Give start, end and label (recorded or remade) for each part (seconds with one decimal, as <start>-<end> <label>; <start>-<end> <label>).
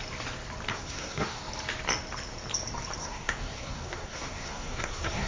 0.0-0.7 recorded; 0.7-1.4 remade; 1.4-3.0 recorded; 3.0-5.3 remade